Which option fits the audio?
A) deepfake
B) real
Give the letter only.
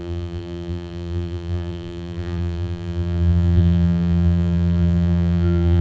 A